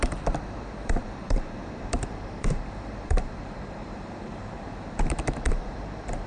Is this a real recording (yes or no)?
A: no